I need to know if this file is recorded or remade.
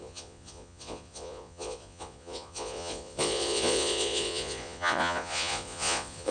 remade